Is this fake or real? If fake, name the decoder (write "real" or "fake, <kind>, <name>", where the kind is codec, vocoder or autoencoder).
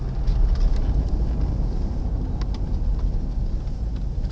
real